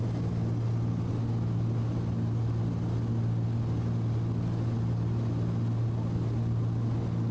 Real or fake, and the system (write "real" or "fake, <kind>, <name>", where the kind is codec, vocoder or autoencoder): real